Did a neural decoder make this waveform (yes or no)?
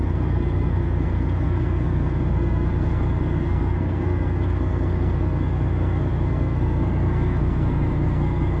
yes